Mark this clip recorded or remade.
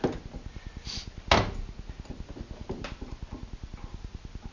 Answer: recorded